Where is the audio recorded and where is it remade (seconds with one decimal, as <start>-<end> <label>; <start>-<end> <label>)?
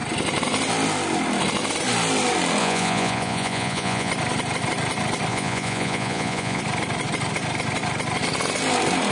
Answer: 0.0-2.6 recorded; 2.6-4.1 remade; 4.1-5.3 recorded; 5.3-6.6 remade; 6.6-9.1 recorded